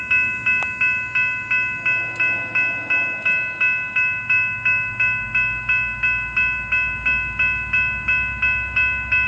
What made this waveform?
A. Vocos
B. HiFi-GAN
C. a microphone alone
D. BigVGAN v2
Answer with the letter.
C